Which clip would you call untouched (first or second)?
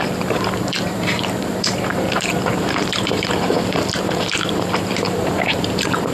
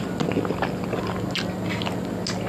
second